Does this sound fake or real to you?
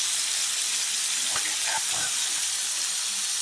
real